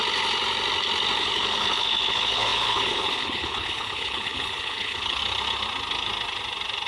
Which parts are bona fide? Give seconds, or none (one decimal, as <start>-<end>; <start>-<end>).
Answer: 0.0-1.2; 5.2-6.9